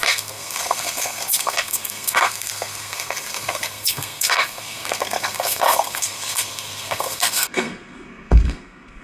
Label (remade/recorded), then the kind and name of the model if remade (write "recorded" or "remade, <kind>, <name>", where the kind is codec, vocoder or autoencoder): remade, codec, SNAC